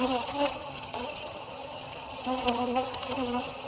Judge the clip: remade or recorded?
remade